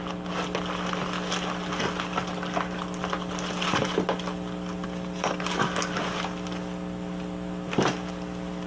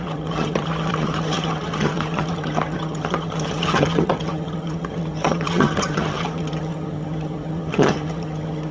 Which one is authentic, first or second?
first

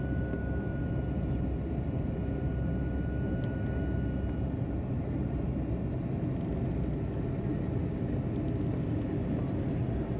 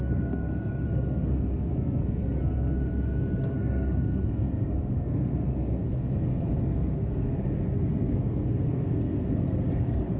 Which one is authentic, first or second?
first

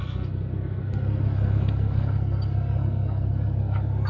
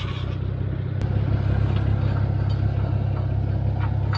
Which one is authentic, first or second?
second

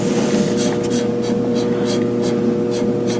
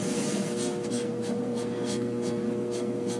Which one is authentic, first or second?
first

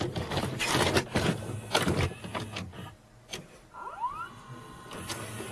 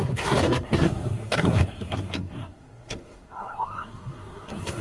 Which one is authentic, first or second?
first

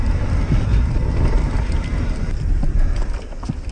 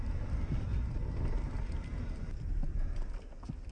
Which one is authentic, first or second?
second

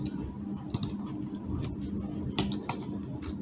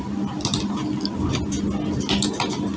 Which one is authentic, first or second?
second